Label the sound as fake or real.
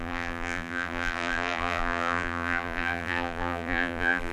fake